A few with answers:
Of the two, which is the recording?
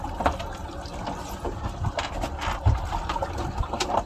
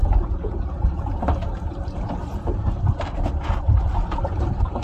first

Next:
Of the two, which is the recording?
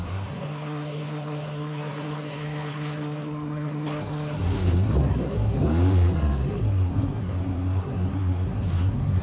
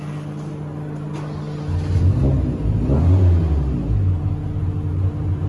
second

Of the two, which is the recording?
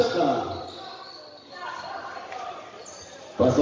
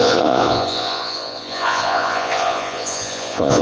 first